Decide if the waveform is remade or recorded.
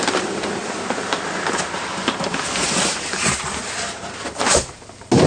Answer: recorded